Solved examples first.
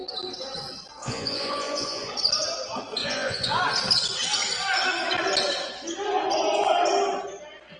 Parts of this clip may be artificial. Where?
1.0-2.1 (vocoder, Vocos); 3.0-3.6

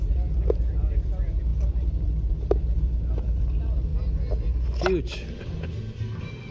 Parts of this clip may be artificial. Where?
none

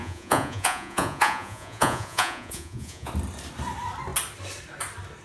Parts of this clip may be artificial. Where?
0.0-3.1 (vocoder, Vocos)